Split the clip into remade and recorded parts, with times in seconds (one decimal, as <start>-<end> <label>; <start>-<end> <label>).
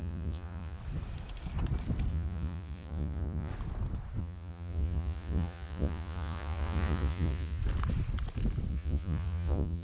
0.0-0.8 remade; 0.8-2.1 recorded; 2.1-3.5 remade; 3.5-4.2 recorded; 4.2-7.6 remade; 7.6-8.7 recorded; 8.7-9.8 remade